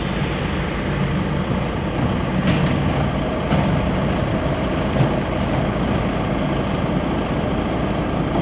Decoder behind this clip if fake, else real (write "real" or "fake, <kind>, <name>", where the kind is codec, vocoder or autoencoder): real